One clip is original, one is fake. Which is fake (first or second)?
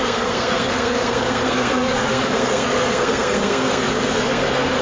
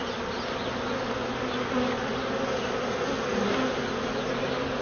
first